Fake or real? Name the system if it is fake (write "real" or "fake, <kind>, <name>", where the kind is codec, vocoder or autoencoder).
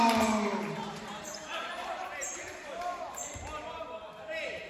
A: fake, vocoder, BigVGAN v2